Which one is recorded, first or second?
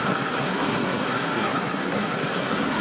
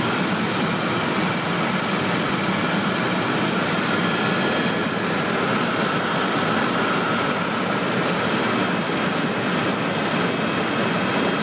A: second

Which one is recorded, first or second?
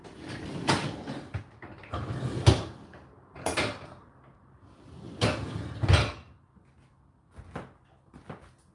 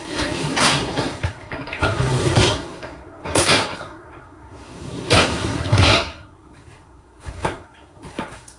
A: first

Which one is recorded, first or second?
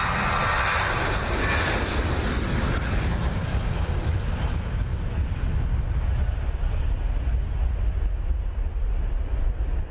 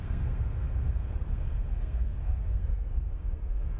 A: first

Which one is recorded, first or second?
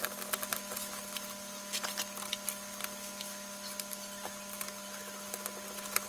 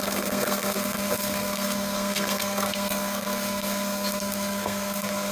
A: first